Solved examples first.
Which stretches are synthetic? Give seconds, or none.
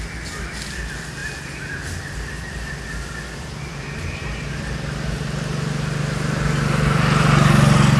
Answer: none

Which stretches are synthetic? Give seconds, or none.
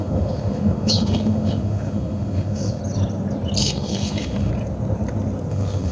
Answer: 0.0-2.8 (autoencoder, DAC-VAE); 3.6-4.5; 5.5-5.9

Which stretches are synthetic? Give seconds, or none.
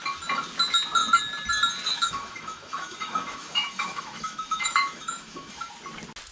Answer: 1.9-5.7 (autoencoder, DAC-VAE)